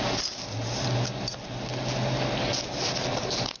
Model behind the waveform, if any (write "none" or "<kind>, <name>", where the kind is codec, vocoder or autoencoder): none